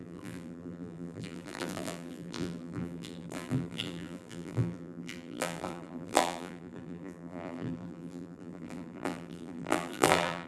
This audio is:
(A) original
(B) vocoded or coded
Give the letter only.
B